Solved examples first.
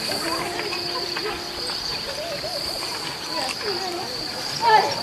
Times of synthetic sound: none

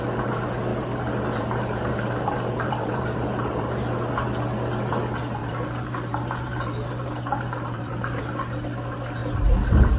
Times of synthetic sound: 0.7-3.9 (vocoder, BigVGAN v2); 5.4-8.2; 9.2-10.0

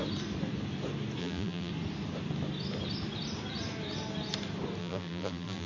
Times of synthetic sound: 1.2-1.7 (vocoder, BigVGAN v2); 4.8-5.7

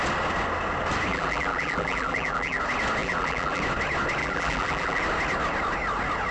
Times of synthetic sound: 1.1-2.6 (vocoder, BigVGAN v2); 3.0-3.6; 4.2-5.0

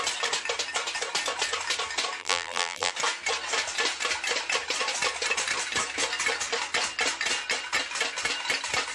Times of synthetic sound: 2.2-2.9 (vocoder, BigVGAN v2)

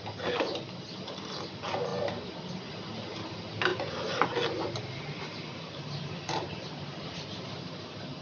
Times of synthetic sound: none

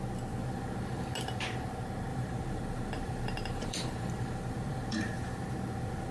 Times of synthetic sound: 2.1-5.5 (vocoder, BigVGAN v2)

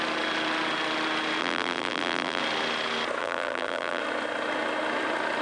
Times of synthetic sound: 1.4-2.4 (vocoder, BigVGAN v2); 3.2-4.0